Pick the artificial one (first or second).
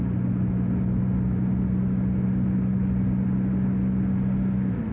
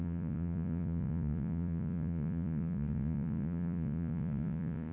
second